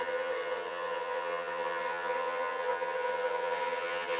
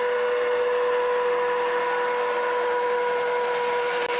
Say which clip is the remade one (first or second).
first